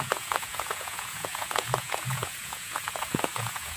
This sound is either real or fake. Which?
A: fake